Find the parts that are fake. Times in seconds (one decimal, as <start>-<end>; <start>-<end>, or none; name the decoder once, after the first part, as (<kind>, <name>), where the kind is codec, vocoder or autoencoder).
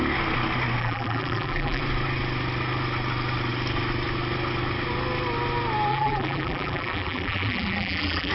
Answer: 0.8-1.8 (vocoder, BigVGAN v2); 5.9-8.3